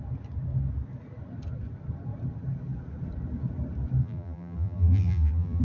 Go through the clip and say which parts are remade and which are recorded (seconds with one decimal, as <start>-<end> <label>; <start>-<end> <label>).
0.0-4.0 recorded; 4.0-5.6 remade